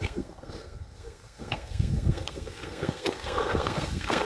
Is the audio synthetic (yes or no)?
yes